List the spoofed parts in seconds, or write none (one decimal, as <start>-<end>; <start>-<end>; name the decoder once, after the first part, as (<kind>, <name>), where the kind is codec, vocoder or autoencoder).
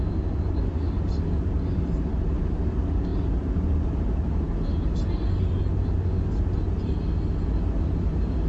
none